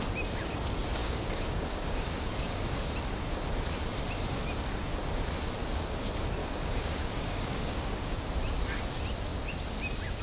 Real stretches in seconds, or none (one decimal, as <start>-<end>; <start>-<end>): 0.0-1.0; 2.9-6.4; 8.2-10.2